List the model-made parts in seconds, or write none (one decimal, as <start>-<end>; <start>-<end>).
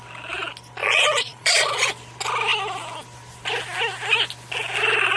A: 0.8-1.9